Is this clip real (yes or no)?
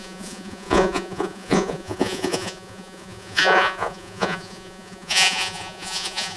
no